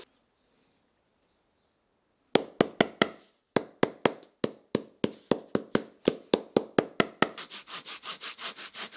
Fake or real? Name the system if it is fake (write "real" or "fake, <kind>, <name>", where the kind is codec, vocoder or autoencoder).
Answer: real